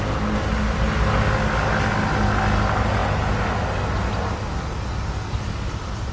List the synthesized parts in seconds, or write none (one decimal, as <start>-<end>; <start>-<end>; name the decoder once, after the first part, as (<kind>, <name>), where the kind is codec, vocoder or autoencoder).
none